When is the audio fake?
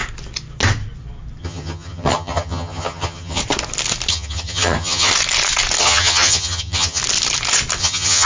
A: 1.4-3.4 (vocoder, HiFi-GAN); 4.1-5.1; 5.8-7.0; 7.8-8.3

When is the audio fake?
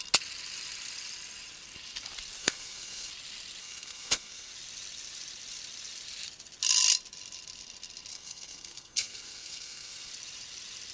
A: 2.4-3.1 (codec, SNAC); 3.6-4.5; 8.1-10.1